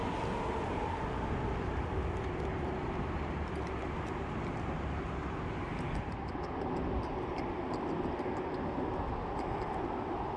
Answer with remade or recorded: recorded